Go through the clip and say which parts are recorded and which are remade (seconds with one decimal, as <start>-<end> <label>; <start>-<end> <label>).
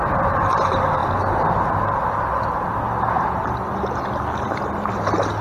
0.0-5.4 recorded